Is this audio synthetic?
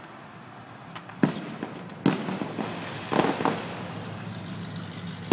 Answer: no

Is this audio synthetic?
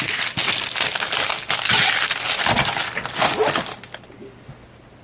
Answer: no